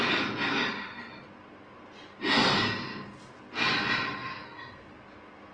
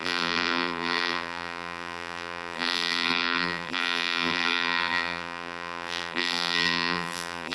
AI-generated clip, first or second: second